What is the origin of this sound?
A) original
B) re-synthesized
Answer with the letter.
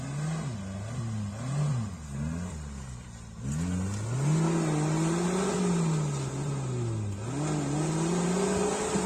A